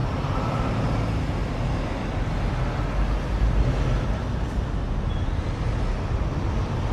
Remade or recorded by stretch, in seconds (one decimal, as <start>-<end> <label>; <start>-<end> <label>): 0.0-6.9 recorded